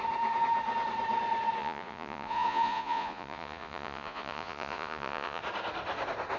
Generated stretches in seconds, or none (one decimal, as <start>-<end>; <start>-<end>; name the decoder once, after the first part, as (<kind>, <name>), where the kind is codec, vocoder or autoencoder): 1.6-5.4 (vocoder, Vocos)